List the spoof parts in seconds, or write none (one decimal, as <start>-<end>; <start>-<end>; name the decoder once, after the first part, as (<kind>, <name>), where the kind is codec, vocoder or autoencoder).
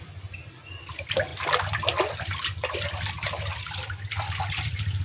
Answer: none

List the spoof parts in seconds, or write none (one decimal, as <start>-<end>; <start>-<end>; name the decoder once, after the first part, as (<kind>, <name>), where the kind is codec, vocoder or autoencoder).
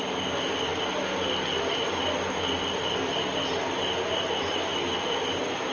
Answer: none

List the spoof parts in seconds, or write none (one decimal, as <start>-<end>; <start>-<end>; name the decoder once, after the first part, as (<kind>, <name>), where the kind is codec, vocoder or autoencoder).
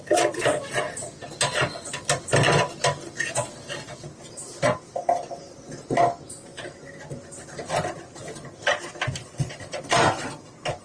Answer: none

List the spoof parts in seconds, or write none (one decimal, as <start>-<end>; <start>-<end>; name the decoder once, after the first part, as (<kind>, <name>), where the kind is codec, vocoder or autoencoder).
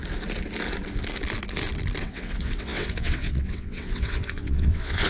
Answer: 2.0-5.1 (vocoder, WaveNeXt)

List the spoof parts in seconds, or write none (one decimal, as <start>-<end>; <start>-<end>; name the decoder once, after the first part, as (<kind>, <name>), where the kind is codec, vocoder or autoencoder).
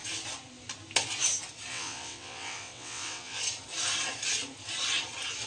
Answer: 1.7-3.4 (vocoder, WaveNeXt)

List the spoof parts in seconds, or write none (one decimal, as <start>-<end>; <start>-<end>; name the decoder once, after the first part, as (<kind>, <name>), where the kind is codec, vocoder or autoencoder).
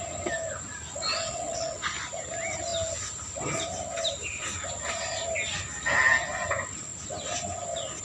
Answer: 1.2-1.8 (vocoder, WaveNeXt)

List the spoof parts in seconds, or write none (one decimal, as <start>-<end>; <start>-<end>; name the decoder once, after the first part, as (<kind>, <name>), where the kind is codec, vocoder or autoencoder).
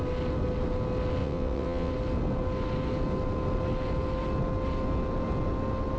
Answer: 1.2-1.9 (vocoder, WaveNeXt)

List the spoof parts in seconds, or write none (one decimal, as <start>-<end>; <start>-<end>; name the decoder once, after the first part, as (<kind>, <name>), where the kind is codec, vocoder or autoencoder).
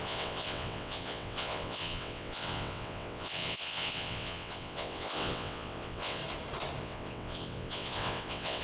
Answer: 0.0-6.2 (vocoder, WaveNeXt); 6.8-8.6